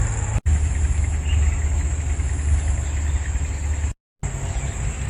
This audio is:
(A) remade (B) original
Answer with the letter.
B